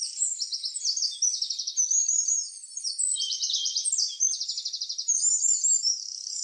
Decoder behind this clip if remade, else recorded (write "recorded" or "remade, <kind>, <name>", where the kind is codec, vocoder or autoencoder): recorded